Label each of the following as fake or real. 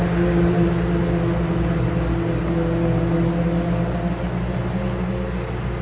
real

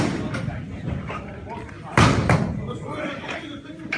fake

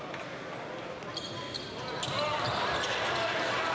real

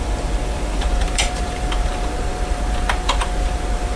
fake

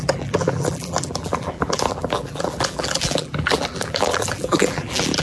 fake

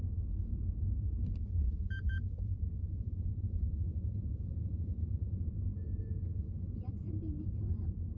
fake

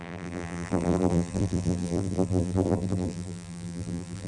fake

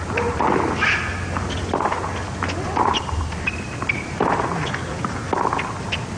real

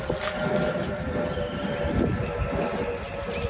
real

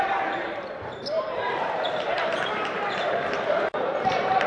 fake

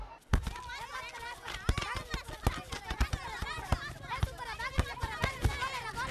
real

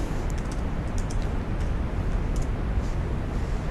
real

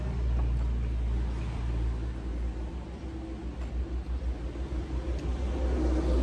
real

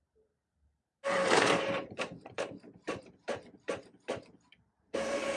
fake